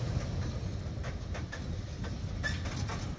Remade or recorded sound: recorded